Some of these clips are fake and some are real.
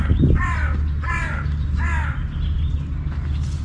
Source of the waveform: real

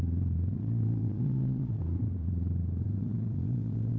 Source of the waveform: fake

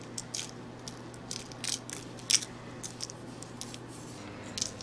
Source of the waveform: real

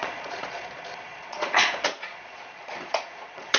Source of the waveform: fake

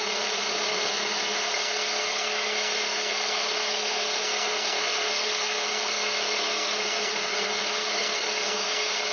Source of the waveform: fake